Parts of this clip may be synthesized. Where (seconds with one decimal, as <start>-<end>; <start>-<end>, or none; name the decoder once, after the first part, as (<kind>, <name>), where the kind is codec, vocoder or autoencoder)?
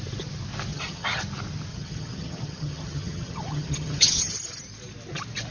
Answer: 0.7-1.2 (vocoder, HiFi-GAN); 1.7-4.3